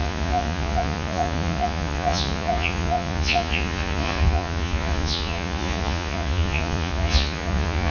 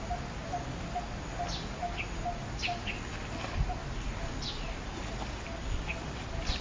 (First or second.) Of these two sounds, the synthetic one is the first